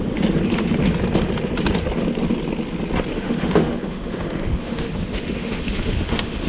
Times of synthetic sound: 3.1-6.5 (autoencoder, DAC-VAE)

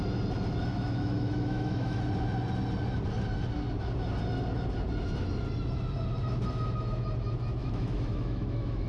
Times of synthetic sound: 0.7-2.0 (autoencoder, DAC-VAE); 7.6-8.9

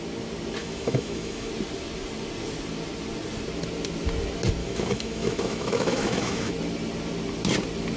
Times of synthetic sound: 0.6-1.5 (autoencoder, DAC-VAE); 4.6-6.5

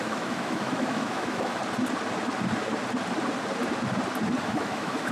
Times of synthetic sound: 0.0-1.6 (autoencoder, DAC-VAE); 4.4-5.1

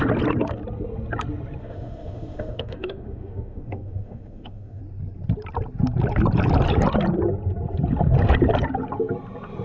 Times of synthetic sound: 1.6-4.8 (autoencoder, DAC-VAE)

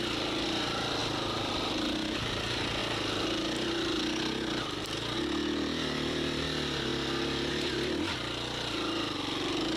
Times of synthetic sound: none

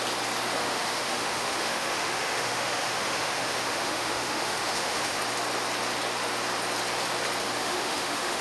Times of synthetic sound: 0.6-5.2 (autoencoder, DAC-VAE); 7.6-8.4

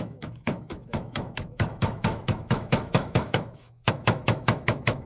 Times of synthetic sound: 0.0-5.1 (autoencoder, DAC-VAE)